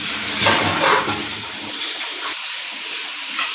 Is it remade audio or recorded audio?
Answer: remade